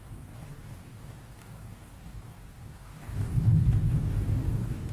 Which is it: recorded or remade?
remade